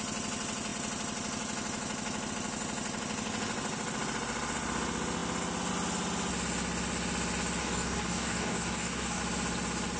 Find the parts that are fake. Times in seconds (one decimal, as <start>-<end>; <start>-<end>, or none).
7.6-9.2